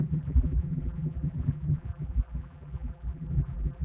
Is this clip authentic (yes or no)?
no